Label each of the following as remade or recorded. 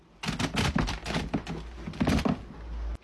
recorded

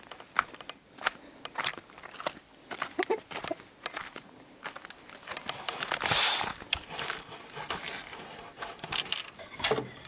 recorded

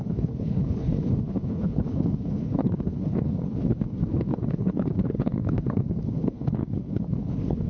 remade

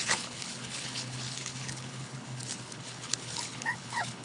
remade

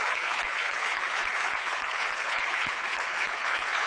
remade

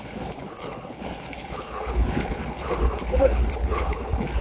remade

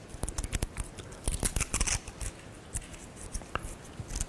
recorded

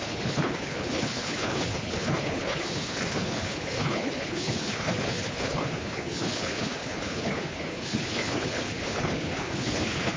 remade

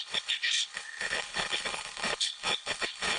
remade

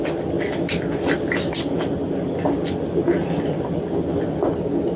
recorded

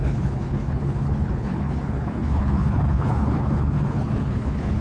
remade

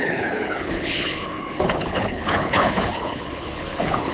remade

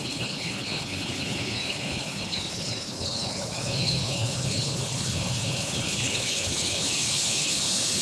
remade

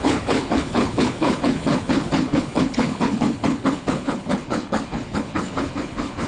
remade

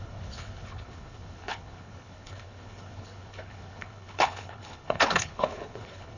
remade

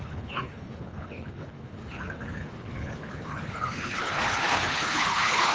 remade